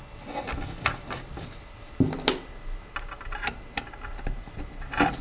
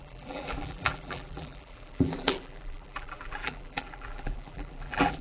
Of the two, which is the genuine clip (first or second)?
first